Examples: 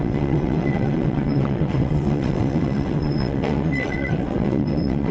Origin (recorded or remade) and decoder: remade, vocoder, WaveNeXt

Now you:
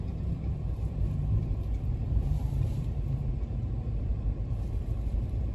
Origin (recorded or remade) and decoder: remade, vocoder, BigVGAN v2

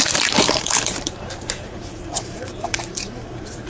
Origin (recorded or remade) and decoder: remade, vocoder, BigVGAN v2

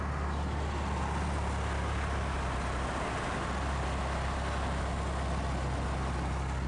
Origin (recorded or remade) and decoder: recorded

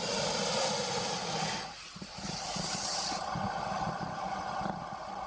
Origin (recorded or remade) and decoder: recorded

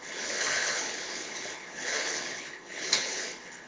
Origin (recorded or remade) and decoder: remade, codec, HILCodec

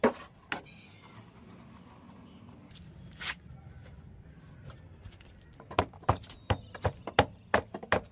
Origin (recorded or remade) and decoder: recorded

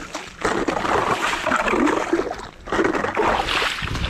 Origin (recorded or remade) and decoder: recorded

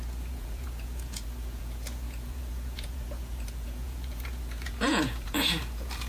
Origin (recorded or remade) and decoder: remade, vocoder, Vocos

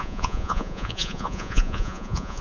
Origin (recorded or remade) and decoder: remade, vocoder, Vocos